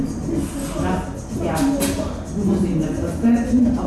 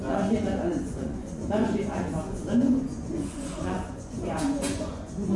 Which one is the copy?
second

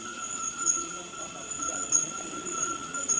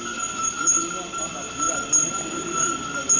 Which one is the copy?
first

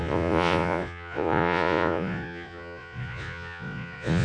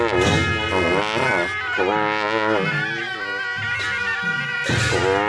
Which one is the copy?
first